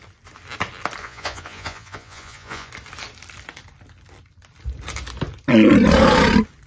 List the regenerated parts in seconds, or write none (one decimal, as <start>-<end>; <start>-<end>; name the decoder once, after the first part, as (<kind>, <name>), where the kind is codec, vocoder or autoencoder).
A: 1.0-2.7 (vocoder, Vocos)